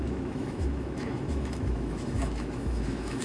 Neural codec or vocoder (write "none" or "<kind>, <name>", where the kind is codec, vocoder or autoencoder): autoencoder, DAC-VAE